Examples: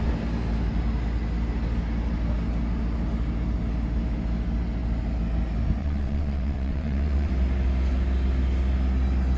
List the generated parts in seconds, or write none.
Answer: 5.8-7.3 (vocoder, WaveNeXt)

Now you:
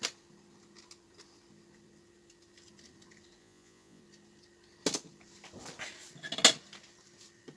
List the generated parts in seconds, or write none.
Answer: 3.4-4.0 (vocoder, Vocos)